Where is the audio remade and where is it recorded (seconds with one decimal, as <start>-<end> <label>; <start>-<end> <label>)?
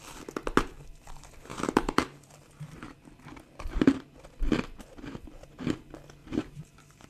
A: 0.0-1.5 recorded; 1.5-4.1 remade; 4.1-6.2 recorded; 6.2-7.1 remade